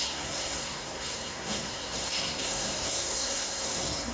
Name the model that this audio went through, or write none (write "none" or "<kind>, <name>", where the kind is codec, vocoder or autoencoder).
codec, SNAC